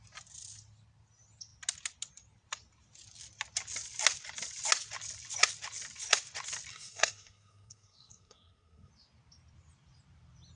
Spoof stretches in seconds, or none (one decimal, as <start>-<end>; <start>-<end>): 6.7-8.9